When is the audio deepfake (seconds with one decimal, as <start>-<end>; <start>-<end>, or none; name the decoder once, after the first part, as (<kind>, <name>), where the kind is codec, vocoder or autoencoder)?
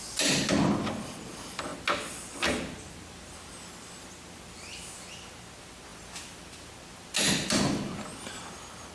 none